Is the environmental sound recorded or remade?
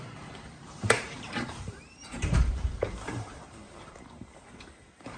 remade